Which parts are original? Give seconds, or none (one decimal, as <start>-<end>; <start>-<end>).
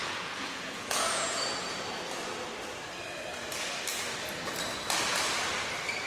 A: 1.4-6.1